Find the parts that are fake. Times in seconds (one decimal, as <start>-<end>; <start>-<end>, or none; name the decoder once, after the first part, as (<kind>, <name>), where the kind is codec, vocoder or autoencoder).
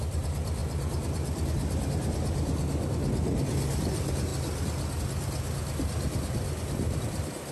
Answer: none